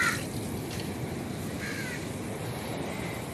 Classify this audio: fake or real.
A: real